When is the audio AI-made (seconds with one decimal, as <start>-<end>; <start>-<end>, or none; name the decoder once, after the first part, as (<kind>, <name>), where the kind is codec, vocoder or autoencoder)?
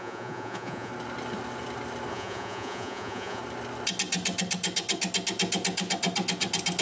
0.0-0.9 (vocoder, Vocos); 2.1-3.4